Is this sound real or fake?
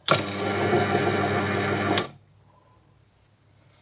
real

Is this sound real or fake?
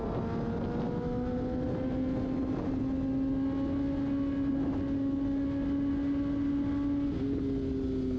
real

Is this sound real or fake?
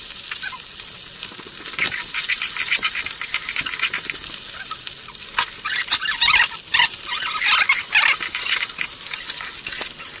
real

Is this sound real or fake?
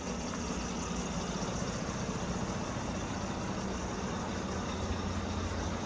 real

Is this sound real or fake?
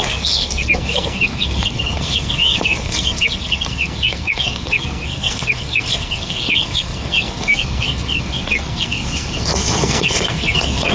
fake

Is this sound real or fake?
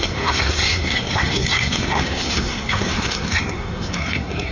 fake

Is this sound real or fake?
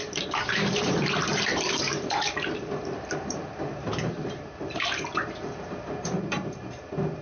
fake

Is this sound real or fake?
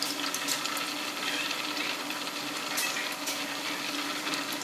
real